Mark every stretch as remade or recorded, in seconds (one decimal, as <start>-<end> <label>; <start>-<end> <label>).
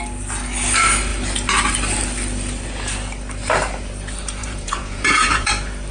0.0-4.4 recorded; 4.4-5.5 remade; 5.5-5.9 recorded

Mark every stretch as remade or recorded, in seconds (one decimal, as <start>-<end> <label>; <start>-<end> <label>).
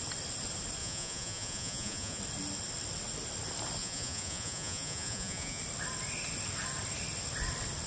0.0-0.8 recorded; 0.8-2.2 remade; 2.2-3.8 recorded; 3.8-5.6 remade; 5.6-7.9 recorded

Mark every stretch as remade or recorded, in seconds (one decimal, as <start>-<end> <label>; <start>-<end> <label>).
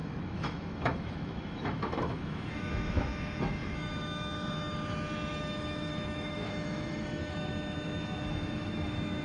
0.0-9.2 remade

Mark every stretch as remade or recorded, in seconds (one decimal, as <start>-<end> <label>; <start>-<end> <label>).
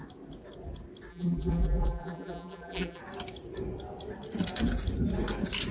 0.0-1.1 recorded; 1.1-3.0 remade; 3.0-5.7 recorded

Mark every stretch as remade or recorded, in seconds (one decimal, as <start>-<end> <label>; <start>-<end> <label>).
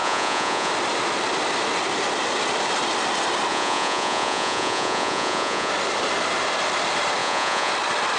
0.0-0.7 remade; 0.7-3.5 recorded; 3.5-5.7 remade; 5.7-7.2 recorded; 7.2-7.7 remade; 7.7-8.2 recorded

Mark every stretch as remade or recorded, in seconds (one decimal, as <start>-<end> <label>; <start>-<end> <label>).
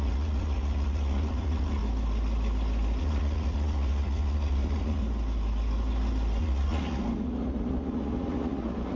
0.0-1.8 remade; 1.8-3.0 recorded; 3.0-5.0 remade; 5.0-6.4 recorded; 6.4-9.0 remade